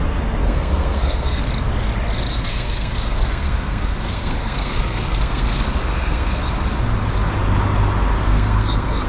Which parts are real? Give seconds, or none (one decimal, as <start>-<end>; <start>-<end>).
0.0-0.4; 1.4-2.3; 6.4-8.3